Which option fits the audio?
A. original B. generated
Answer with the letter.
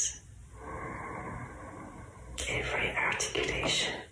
B